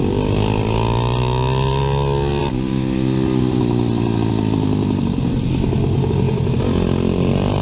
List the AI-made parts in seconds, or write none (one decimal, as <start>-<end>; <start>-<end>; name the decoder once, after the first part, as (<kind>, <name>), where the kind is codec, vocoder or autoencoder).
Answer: none